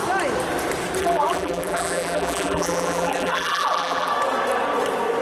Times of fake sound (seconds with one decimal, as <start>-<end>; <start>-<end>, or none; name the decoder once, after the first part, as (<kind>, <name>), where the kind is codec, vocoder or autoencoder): 1.0-4.1 (vocoder, BigVGAN v2)